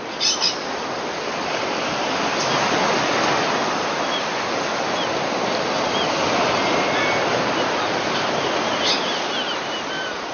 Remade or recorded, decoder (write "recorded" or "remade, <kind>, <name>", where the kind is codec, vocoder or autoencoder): recorded